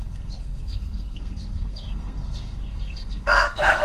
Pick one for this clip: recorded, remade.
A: remade